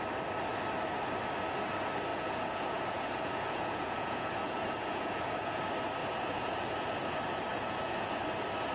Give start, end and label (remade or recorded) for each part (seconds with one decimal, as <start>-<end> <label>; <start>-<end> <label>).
0.0-2.1 recorded; 2.1-5.6 remade; 5.6-6.0 recorded; 6.0-7.1 remade; 7.1-7.5 recorded; 7.5-8.2 remade; 8.2-8.7 recorded